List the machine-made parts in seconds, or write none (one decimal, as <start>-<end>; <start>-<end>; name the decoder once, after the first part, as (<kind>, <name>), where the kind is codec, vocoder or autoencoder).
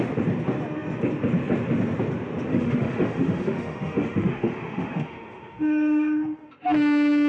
2.5-6.5 (autoencoder, DAC-VAE)